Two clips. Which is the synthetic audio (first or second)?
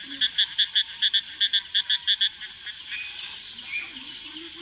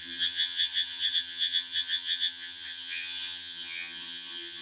second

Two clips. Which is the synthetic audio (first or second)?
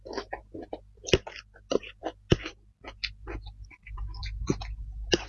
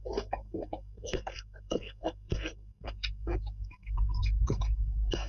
second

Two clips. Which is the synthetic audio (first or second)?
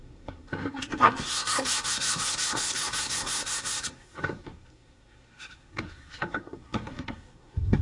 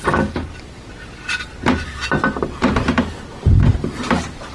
first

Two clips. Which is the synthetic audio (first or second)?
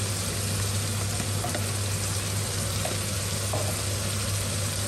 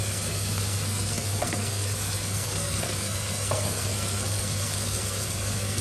second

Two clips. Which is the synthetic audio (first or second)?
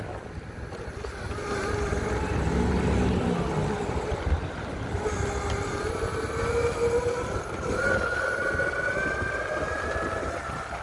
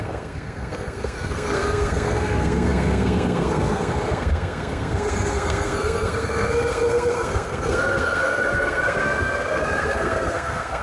second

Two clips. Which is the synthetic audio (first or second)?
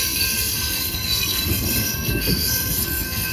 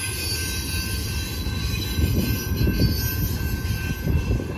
first